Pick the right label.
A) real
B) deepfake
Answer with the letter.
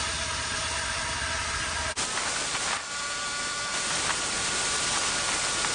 A